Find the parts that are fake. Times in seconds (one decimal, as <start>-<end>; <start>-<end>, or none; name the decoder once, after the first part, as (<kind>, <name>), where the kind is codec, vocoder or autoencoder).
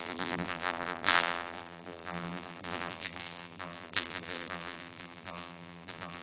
0.0-6.2 (vocoder, BigVGAN v2)